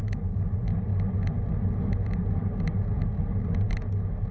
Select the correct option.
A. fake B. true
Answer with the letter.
B